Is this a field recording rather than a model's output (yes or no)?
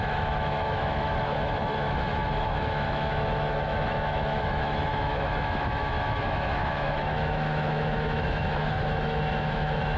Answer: no